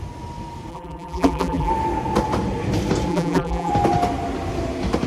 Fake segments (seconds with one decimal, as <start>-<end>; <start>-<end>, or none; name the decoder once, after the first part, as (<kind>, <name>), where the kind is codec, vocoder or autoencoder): 0.7-1.7 (vocoder, BigVGAN v2); 3.1-3.7